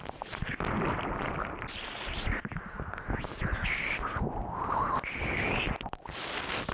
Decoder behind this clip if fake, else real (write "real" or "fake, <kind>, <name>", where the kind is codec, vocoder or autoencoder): real